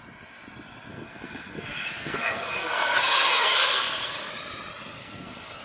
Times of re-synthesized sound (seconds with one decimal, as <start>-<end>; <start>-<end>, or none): 0.9-4.3; 5.0-5.6